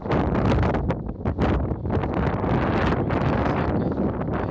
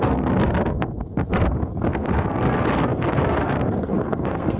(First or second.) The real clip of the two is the first